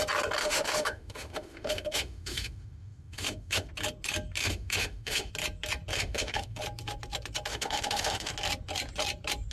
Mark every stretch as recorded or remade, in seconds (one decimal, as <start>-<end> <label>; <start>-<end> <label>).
0.0-0.4 recorded; 0.4-3.7 remade; 3.7-4.4 recorded; 4.4-5.3 remade; 5.3-5.9 recorded; 5.9-6.6 remade; 6.6-7.5 recorded; 7.5-8.3 remade; 8.3-9.5 recorded